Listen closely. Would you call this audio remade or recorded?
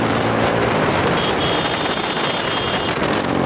recorded